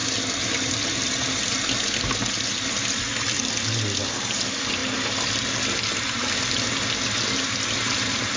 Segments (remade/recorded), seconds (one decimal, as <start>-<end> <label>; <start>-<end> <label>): 0.0-8.4 recorded